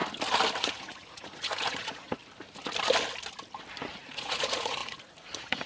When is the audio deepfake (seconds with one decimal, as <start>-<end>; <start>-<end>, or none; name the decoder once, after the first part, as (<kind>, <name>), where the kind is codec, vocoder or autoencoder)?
0.6-2.2 (vocoder, Vocos); 3.9-5.7